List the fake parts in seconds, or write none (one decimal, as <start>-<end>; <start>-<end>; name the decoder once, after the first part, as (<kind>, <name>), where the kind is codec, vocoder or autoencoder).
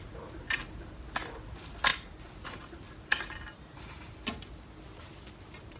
none